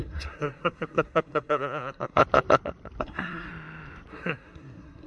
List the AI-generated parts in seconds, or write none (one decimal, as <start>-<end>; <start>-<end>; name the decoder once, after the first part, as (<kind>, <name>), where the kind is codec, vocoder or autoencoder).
0.0-2.2 (codec, SNAC); 3.0-3.5; 4.1-5.1